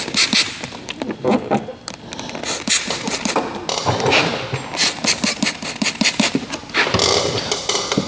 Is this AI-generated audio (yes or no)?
no